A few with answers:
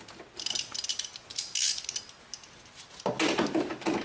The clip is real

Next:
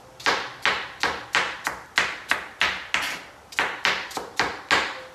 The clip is real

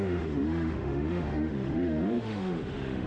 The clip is fake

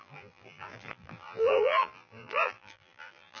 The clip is fake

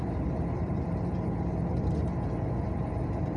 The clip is fake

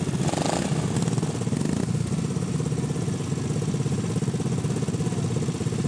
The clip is real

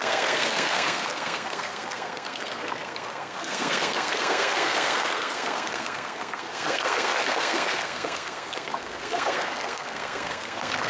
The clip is fake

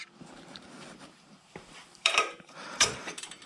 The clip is fake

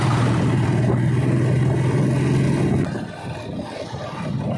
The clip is real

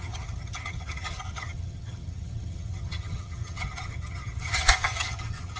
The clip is fake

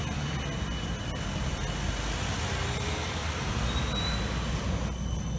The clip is real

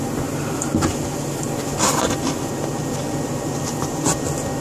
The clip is fake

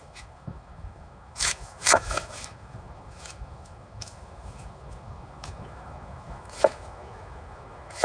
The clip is fake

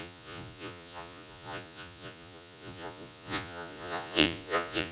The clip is fake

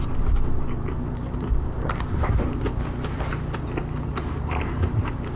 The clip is real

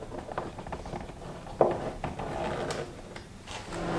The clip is real